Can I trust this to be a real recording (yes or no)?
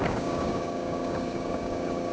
no